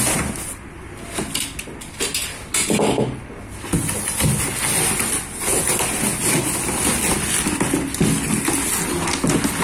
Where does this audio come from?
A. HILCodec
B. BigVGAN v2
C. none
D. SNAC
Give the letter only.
C